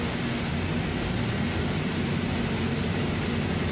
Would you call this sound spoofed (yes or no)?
no